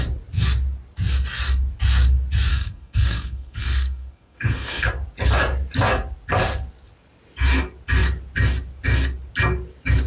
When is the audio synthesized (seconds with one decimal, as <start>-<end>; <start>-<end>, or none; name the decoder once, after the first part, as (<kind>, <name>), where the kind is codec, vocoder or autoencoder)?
2.5-4.9 (codec, SNAC)